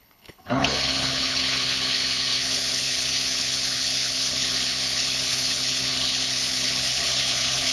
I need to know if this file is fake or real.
fake